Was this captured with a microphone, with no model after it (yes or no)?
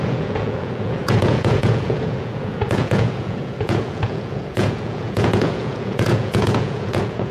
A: no